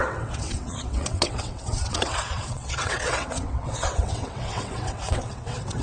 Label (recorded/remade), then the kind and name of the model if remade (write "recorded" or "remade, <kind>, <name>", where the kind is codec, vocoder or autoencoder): remade, vocoder, WaveNeXt